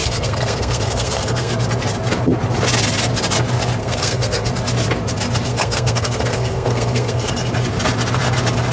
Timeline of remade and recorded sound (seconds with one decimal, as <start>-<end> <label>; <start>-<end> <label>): 0.0-1.5 remade; 1.5-3.8 recorded; 3.8-4.5 remade; 4.5-5.5 recorded; 5.5-7.3 remade; 7.3-8.7 recorded